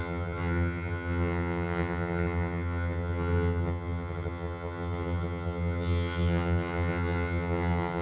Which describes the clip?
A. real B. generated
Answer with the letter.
B